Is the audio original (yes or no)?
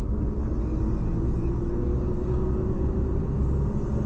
yes